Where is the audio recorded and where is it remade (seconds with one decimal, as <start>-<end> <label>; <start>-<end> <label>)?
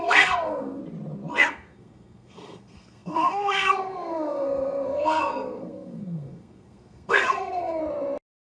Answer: 0.0-0.8 remade; 0.8-1.5 recorded; 1.5-7.8 remade; 7.8-8.4 recorded